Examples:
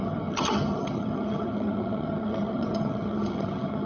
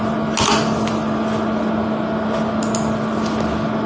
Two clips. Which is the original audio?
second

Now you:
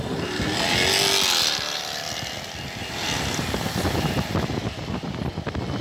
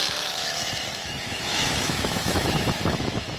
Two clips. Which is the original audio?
first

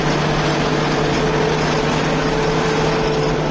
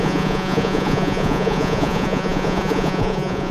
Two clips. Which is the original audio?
first